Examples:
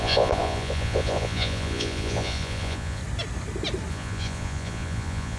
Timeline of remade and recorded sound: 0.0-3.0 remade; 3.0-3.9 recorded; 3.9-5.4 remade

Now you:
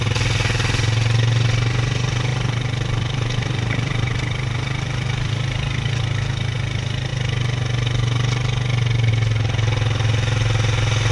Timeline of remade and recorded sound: 0.0-2.3 recorded; 2.3-6.0 remade; 6.0-11.1 recorded

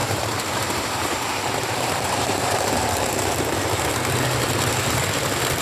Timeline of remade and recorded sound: 0.0-3.4 remade; 3.4-5.6 recorded

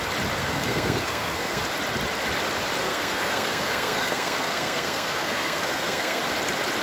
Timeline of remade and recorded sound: 0.0-0.4 recorded; 0.4-1.6 remade; 1.6-2.8 recorded; 2.8-6.2 remade; 6.2-6.8 recorded